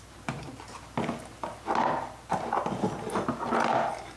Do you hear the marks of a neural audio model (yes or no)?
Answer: no